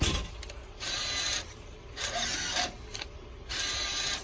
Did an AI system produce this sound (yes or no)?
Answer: no